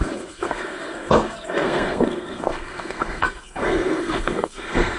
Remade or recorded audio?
remade